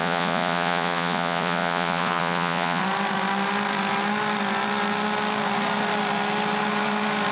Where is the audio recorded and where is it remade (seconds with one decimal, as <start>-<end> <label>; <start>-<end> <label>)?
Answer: 0.0-2.8 remade; 2.8-7.3 recorded